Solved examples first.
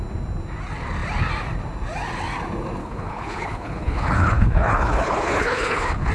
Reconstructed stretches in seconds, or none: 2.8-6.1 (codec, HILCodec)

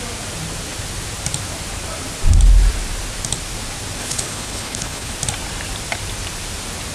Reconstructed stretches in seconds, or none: 4.0-5.1 (codec, HILCodec)